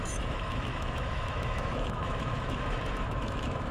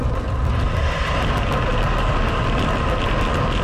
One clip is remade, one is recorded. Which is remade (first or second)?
first